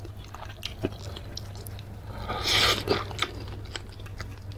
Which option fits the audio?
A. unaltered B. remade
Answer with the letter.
A